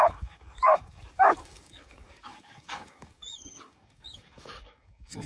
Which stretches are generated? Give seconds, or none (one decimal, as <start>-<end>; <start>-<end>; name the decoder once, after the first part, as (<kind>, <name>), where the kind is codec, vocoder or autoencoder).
0.0-5.3 (codec, DAC)